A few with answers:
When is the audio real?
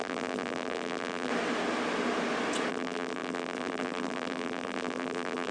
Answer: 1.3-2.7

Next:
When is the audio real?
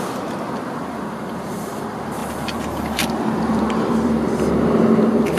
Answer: 0.0-2.2; 4.3-5.4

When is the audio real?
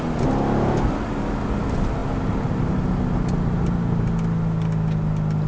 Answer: 0.0-5.5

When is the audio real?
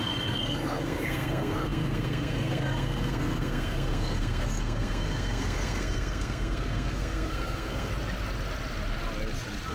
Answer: 7.9-9.7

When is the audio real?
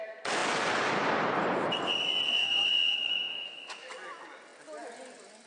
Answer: 0.0-2.4; 3.9-5.5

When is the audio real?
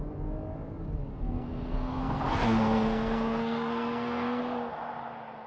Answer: 0.0-1.1; 4.4-5.5